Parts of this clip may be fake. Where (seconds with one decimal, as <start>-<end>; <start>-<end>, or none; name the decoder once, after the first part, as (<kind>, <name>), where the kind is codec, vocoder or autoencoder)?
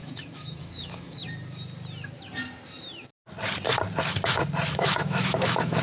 0.0-1.2 (autoencoder, DAC-VAE); 4.7-5.8